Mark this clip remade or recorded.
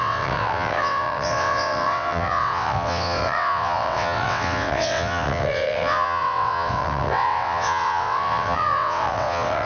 remade